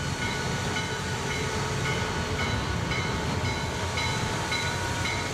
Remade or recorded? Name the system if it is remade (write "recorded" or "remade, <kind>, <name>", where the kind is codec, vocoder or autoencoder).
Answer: remade, vocoder, BigVGAN v2